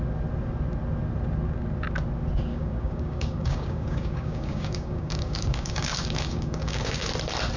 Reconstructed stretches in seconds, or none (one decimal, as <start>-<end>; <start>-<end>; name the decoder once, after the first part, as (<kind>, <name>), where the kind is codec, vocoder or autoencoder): 2.5-7.1 (codec, DAC)